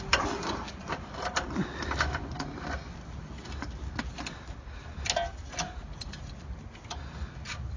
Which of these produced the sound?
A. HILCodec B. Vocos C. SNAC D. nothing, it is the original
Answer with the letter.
D